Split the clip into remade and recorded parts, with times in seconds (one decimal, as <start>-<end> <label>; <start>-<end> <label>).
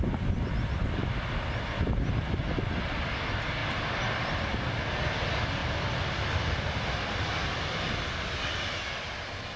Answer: 0.0-3.6 recorded; 3.6-4.5 remade; 4.5-5.6 recorded; 5.6-9.6 remade